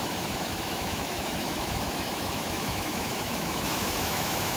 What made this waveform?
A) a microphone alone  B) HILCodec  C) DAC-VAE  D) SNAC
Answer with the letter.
C